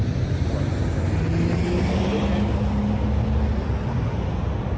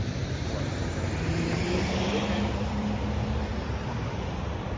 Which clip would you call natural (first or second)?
first